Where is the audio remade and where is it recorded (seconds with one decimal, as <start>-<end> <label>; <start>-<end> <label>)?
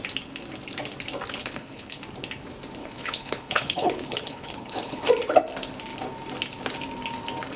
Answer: 0.0-1.4 recorded; 1.4-2.0 remade; 2.0-2.8 recorded; 2.8-5.1 remade; 5.1-7.6 recorded